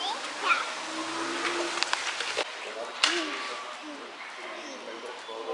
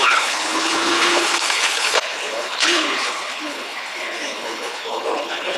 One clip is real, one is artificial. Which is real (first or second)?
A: first